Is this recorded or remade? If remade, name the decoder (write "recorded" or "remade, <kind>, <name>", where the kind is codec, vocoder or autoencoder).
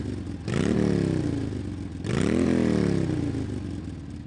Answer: recorded